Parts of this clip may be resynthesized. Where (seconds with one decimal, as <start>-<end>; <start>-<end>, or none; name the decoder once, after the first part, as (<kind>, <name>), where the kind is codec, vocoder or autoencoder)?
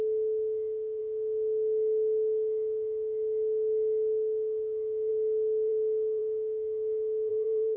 7.3-7.8 (vocoder, BigVGAN v2)